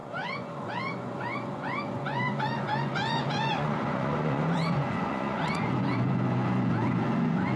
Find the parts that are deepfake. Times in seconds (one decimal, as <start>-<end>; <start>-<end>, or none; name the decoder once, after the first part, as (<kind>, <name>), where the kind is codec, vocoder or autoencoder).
0.0-7.6 (vocoder, Vocos)